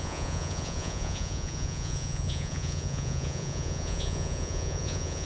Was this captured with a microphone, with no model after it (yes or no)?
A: no